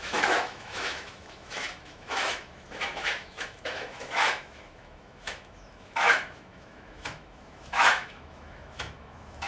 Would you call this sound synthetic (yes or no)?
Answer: yes